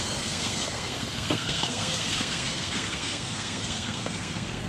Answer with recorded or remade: remade